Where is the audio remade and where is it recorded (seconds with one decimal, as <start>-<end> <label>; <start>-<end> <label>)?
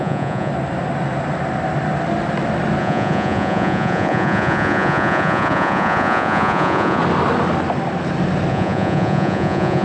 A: 0.0-0.5 remade; 0.5-2.8 recorded; 2.8-7.0 remade; 7.0-8.5 recorded; 8.5-9.8 remade